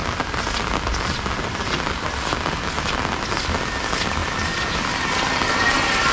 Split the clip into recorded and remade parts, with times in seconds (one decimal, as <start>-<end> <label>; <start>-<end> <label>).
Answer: 0.0-6.1 recorded

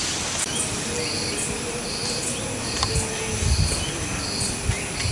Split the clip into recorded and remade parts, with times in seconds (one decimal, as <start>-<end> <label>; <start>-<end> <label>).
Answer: 0.0-5.1 recorded